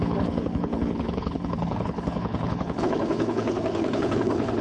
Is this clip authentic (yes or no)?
no